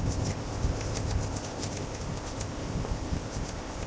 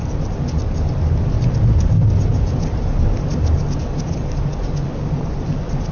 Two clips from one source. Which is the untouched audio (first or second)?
second